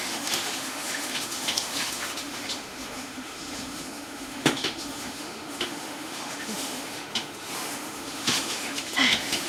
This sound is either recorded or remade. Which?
remade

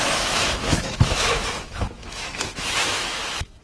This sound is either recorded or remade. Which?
remade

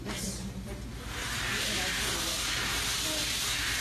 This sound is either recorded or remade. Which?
recorded